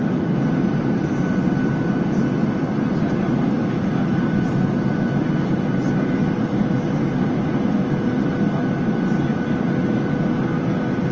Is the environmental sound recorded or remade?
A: recorded